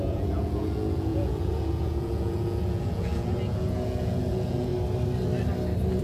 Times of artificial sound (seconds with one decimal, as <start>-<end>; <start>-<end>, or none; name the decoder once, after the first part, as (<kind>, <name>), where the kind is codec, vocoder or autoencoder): 0.0-4.7 (vocoder, Vocos)